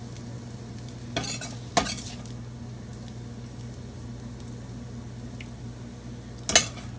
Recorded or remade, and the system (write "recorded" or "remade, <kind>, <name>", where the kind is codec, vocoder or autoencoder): recorded